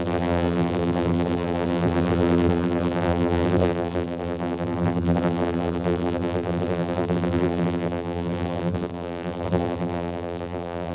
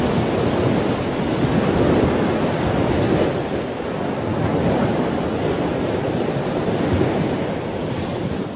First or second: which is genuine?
second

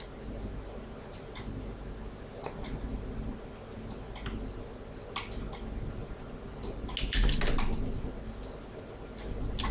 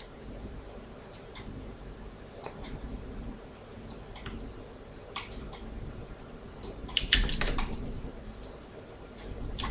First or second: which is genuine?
first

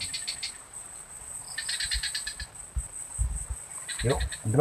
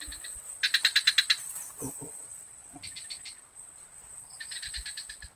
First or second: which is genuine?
first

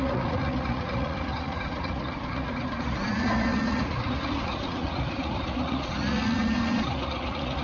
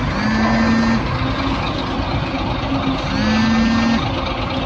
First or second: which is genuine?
second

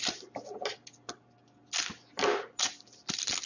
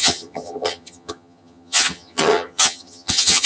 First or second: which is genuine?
first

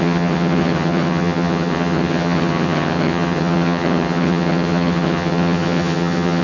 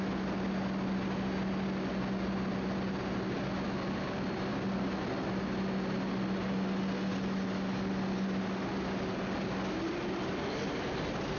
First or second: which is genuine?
second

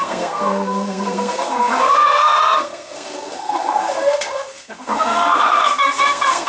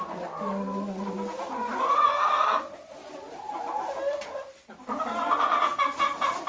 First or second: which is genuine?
second